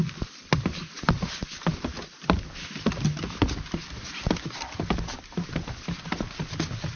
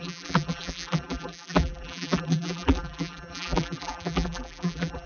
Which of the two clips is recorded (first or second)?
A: first